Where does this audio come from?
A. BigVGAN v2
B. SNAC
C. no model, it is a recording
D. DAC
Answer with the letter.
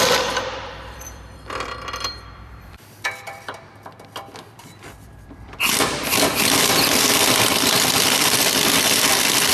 A